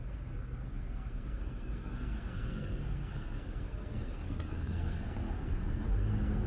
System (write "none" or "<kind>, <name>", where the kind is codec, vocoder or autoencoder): codec, SNAC